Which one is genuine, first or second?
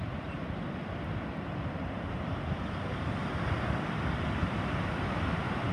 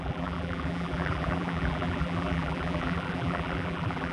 first